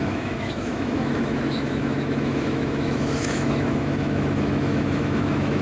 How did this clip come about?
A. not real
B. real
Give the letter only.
A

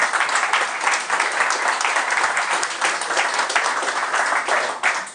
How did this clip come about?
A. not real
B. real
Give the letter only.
B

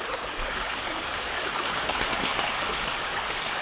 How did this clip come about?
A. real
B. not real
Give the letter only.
B